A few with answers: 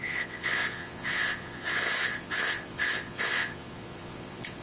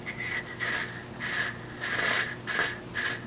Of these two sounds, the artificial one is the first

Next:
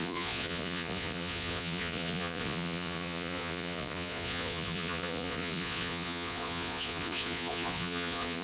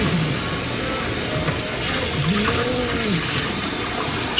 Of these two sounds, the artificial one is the first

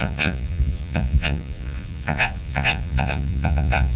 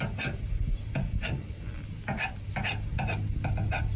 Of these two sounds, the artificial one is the first